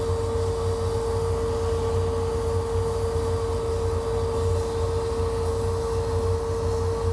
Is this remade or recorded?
recorded